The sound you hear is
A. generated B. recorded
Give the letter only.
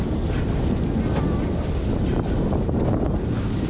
B